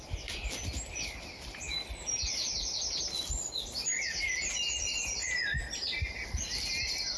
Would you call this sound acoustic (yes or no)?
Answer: yes